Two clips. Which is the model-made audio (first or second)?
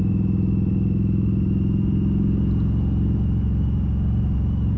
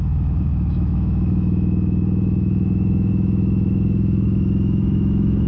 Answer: second